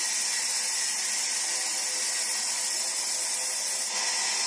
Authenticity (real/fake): real